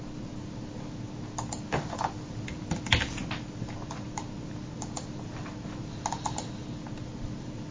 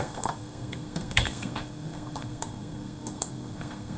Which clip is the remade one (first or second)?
second